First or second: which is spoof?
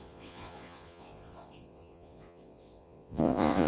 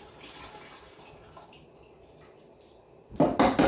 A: first